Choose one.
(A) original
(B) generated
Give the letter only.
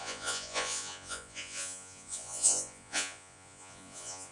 B